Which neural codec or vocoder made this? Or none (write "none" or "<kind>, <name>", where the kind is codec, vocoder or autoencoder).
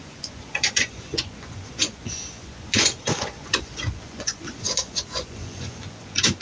vocoder, Vocos